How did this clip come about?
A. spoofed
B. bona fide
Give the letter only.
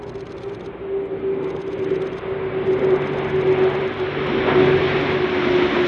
B